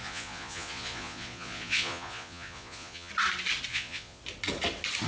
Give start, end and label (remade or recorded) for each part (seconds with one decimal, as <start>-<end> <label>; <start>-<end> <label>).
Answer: 0.0-3.1 remade; 3.1-3.7 recorded; 3.7-4.2 remade; 4.2-5.1 recorded